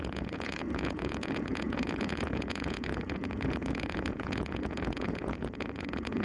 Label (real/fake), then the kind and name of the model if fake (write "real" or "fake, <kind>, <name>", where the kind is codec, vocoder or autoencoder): fake, vocoder, Vocos